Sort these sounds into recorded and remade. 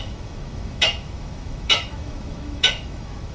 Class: remade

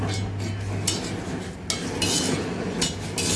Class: recorded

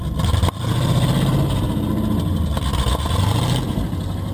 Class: remade